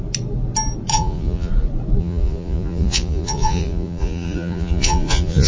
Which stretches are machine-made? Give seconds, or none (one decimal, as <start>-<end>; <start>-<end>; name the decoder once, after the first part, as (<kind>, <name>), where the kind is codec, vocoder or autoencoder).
0.9-1.5 (vocoder, Vocos); 2.0-5.5